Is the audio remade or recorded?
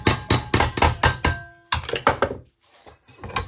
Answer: recorded